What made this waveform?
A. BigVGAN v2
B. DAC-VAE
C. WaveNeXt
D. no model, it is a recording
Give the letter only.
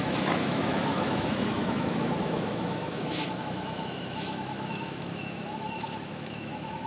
B